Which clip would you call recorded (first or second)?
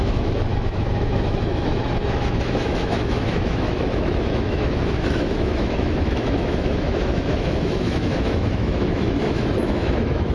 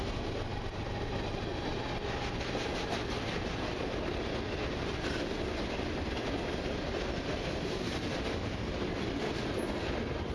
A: second